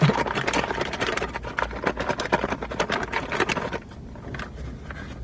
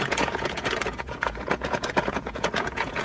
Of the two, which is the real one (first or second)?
first